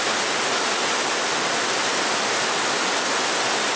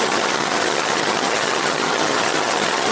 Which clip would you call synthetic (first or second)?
second